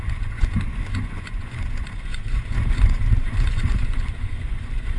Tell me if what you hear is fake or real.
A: fake